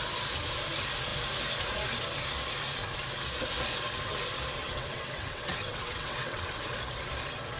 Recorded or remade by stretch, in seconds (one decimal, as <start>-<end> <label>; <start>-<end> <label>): 0.0-4.6 recorded; 4.6-6.5 remade; 6.5-7.6 recorded